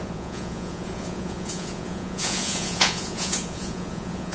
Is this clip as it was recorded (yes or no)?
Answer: no